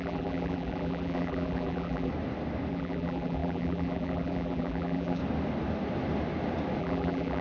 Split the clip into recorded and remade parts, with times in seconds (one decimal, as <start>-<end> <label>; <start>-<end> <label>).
0.0-2.1 remade; 2.1-2.7 recorded; 2.7-5.2 remade; 5.2-6.8 recorded; 6.8-7.4 remade